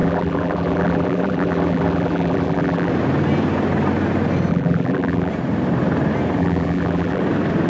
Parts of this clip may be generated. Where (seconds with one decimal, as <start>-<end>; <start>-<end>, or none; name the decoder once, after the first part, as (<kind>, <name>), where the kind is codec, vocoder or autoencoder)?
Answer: 0.0-2.9 (vocoder, BigVGAN v2); 4.5-5.3; 6.4-7.2